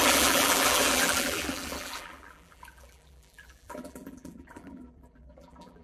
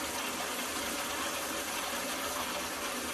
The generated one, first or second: first